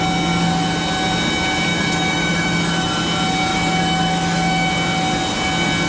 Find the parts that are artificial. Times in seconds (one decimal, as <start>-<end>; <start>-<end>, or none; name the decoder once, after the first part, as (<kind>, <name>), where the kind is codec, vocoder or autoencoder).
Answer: 1.7-3.0 (autoencoder, DAC-VAE); 3.5-4.7